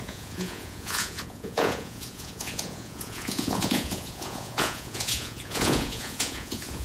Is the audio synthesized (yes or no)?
yes